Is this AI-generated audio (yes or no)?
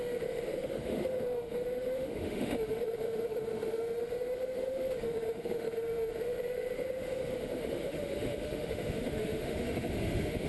yes